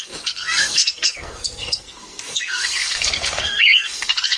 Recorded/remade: remade